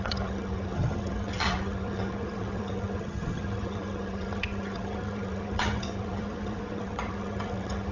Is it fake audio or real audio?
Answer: fake